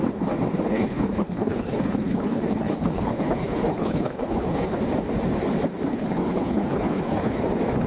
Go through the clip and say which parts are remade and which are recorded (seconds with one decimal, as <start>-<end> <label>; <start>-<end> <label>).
0.0-0.7 recorded; 0.7-4.8 remade; 4.8-5.9 recorded; 5.9-7.4 remade; 7.4-7.9 recorded